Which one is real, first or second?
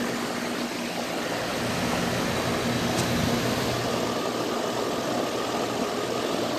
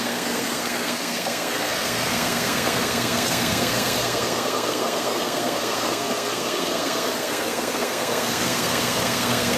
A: first